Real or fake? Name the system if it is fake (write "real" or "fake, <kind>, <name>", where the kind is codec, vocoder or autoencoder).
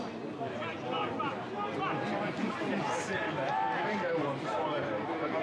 fake, vocoder, BigVGAN v2